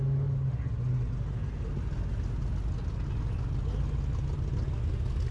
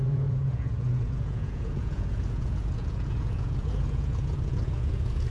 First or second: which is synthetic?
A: second